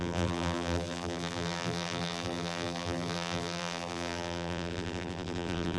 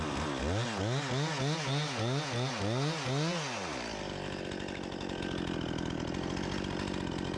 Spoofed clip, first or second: first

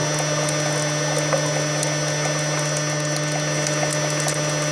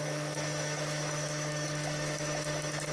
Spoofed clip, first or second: second